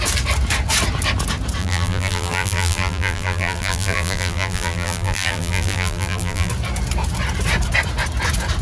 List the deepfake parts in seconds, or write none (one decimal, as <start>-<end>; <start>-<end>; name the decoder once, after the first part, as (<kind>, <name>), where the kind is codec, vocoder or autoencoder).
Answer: 1.6-6.5 (vocoder, BigVGAN v2)